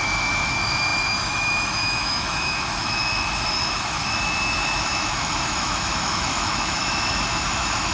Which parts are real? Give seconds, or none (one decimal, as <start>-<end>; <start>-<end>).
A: none